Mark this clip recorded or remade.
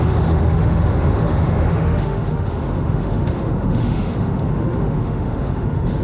remade